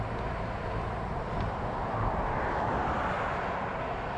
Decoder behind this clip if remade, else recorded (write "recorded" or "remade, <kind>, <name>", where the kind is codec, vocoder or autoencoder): recorded